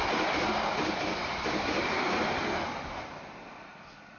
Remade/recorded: recorded